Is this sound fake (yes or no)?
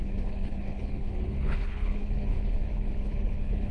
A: yes